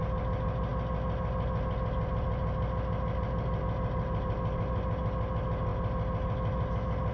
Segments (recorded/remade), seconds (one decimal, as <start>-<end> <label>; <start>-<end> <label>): 0.0-7.1 recorded